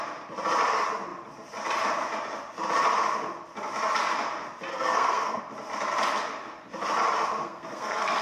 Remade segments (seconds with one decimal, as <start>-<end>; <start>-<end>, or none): 4.7-5.4; 7.4-8.2